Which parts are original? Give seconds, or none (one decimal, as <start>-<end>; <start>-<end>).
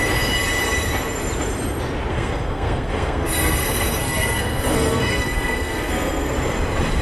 0.0-2.1; 6.3-7.0